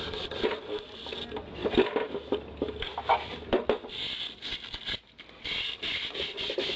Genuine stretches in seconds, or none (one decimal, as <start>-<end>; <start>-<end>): 0.0-6.8